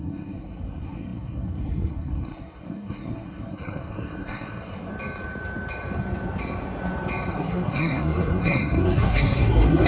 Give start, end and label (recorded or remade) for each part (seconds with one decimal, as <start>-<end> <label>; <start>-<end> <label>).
0.0-4.9 remade; 4.9-7.3 recorded; 7.3-9.9 remade